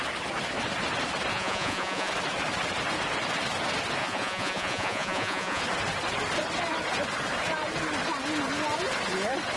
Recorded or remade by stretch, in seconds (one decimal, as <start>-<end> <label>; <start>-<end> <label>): 0.0-1.3 recorded; 1.3-2.1 remade; 2.1-4.0 recorded; 4.0-5.6 remade; 5.6-9.6 recorded